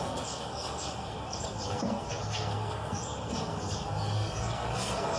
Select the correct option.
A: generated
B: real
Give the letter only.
A